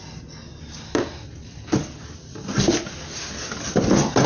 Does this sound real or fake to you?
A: real